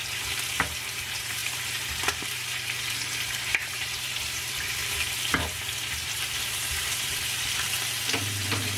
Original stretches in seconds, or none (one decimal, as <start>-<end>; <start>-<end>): none